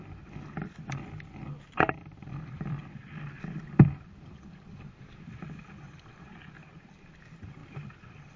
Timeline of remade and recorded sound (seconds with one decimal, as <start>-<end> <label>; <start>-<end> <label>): 0.0-7.6 remade; 7.6-8.4 recorded